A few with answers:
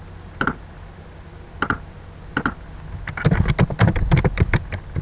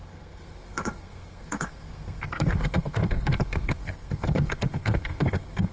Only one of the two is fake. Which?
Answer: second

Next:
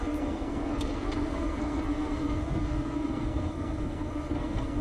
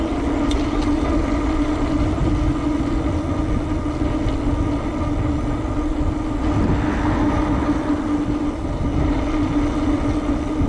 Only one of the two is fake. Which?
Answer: first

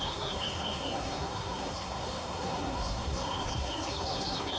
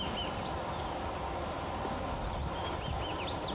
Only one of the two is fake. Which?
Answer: first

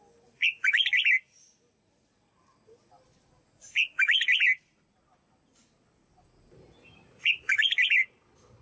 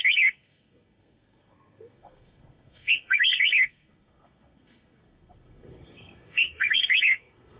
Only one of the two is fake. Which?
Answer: second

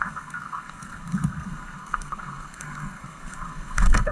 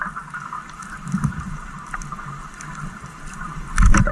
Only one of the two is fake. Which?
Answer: first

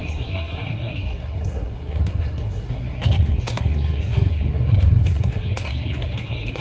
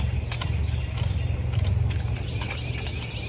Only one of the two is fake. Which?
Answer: first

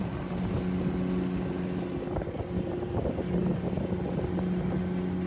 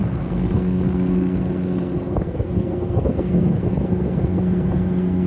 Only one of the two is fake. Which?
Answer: second